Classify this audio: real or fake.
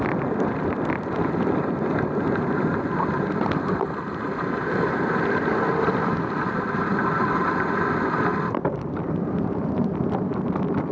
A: fake